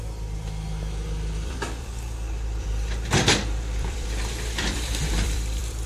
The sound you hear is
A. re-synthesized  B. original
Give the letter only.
A